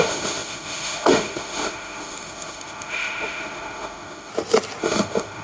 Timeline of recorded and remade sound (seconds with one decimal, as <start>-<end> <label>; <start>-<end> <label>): 0.0-4.3 remade; 4.3-4.8 recorded; 4.8-5.4 remade